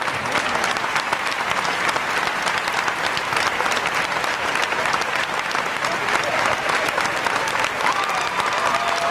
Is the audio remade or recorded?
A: recorded